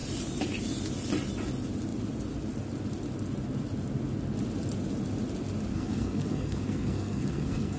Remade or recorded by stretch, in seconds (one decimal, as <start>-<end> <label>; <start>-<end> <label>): 0.0-5.7 recorded; 5.7-7.8 remade